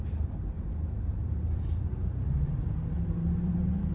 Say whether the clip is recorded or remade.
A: remade